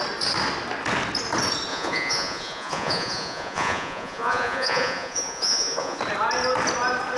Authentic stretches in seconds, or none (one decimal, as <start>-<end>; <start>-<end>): 0.0-1.7; 6.0-7.2